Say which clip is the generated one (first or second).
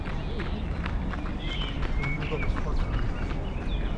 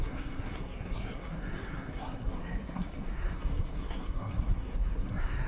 second